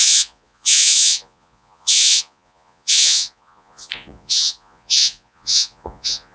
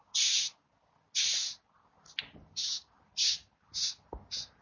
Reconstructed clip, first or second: first